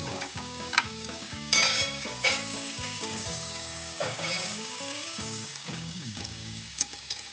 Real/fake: fake